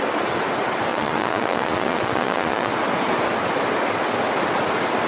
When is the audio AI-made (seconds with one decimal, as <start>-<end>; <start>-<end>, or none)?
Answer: 0.9-2.7